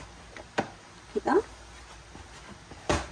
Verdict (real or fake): real